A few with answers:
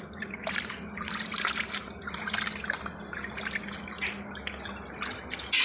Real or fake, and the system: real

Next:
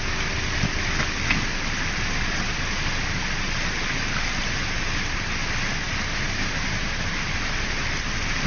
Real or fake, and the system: real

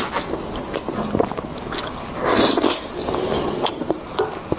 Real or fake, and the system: real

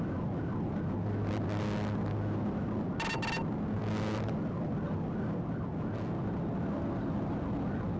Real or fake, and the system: real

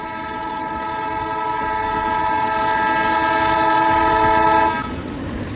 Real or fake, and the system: real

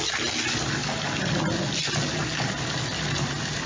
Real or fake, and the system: real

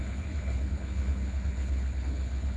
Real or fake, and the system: fake, codec, HILCodec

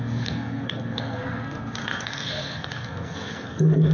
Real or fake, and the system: fake, codec, SNAC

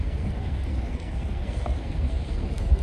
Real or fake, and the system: fake, codec, SNAC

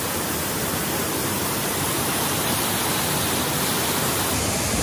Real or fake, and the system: real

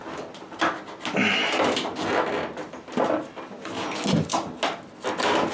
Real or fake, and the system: real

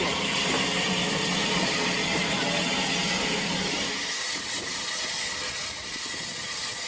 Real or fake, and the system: real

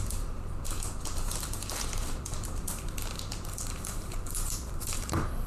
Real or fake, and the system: fake, vocoder, BigVGAN v2